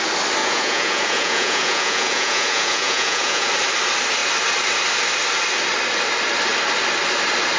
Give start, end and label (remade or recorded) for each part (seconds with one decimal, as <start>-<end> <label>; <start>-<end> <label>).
0.0-0.4 recorded; 0.4-3.5 remade; 3.5-7.6 recorded